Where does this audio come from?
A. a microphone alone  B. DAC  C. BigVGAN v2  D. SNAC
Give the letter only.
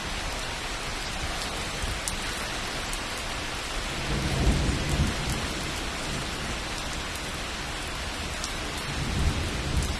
A